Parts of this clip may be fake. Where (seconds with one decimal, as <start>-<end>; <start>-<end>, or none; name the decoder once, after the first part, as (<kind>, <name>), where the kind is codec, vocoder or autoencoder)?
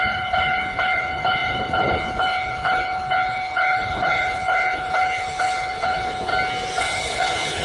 0.0-6.3 (codec, HILCodec); 6.8-7.6